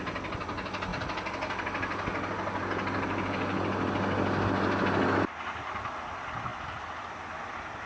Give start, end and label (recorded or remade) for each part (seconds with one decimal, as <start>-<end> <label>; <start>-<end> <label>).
0.0-7.9 recorded